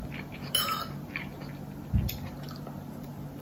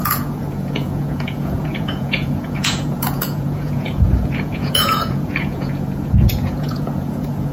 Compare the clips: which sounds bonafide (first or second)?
first